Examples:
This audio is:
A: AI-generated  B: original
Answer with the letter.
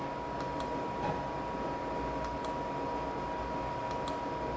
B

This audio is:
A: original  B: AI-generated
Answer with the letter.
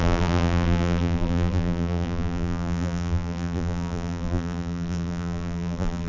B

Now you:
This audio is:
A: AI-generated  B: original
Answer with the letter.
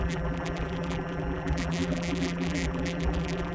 A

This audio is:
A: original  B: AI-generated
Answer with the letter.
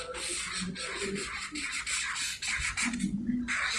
A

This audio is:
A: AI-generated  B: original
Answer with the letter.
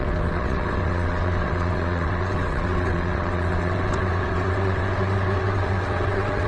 A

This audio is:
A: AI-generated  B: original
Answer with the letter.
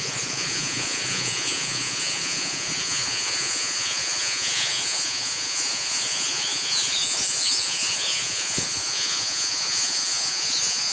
A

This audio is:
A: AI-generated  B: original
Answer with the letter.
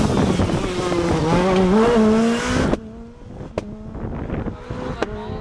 B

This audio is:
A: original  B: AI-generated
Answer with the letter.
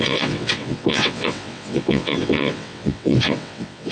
B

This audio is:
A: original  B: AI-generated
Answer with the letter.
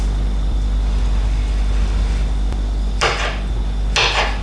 A